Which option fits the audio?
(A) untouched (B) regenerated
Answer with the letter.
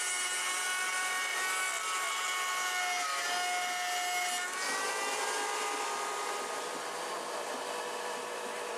A